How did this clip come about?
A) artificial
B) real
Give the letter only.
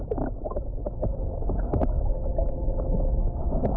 B